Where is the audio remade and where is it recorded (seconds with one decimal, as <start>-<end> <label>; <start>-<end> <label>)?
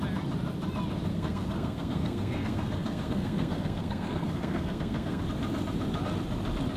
0.0-1.1 recorded; 1.1-5.2 remade; 5.2-6.8 recorded